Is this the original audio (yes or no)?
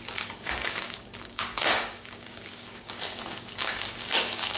no